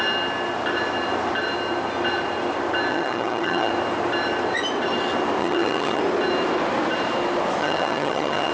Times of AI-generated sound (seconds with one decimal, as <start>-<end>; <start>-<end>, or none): 2.9-3.7; 5.4-6.0; 7.6-8.5